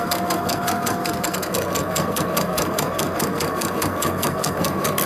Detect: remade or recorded remade